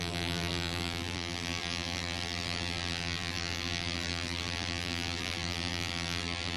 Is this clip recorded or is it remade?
remade